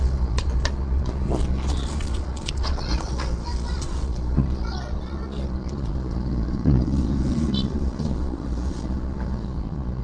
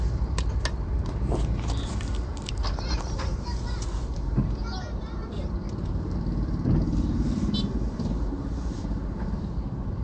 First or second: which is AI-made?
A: first